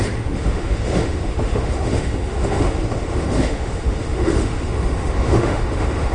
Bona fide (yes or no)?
no